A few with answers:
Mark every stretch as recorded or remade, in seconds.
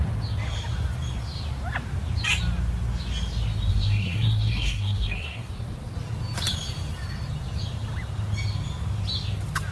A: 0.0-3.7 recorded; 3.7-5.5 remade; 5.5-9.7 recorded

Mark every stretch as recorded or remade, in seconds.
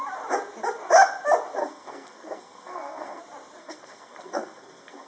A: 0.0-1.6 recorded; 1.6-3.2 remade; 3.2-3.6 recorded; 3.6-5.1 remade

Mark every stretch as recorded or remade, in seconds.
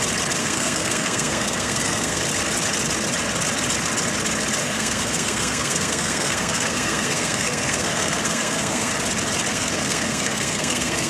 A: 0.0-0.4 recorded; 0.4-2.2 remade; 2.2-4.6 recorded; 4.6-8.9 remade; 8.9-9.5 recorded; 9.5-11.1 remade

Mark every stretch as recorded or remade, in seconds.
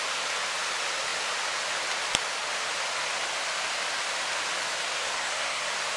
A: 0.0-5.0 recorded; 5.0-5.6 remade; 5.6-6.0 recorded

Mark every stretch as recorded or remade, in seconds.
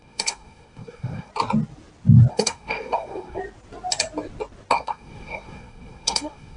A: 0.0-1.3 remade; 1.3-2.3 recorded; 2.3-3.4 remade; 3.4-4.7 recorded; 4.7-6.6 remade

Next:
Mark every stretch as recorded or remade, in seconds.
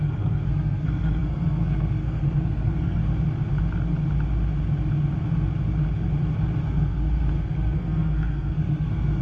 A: 0.0-3.0 remade; 3.0-6.6 recorded; 6.6-9.2 remade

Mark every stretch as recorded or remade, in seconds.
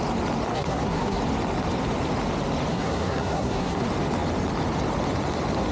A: 0.0-0.5 recorded; 0.5-1.2 remade; 1.2-2.7 recorded; 2.7-3.8 remade; 3.8-5.7 recorded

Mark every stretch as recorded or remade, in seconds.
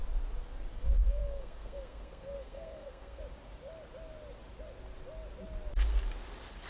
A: 0.0-0.7 recorded; 0.7-3.2 remade; 3.2-6.7 recorded